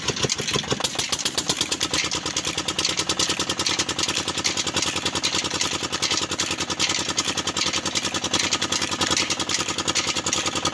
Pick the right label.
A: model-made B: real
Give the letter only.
B